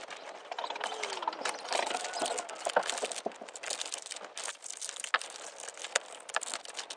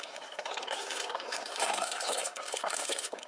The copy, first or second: second